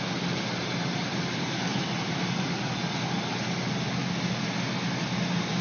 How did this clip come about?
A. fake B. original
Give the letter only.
B